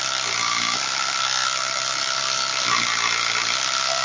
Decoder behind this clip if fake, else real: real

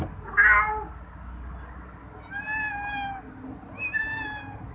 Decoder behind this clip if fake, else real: real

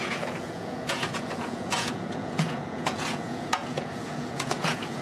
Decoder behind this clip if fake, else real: fake, vocoder, Vocos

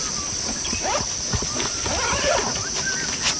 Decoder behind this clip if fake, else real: real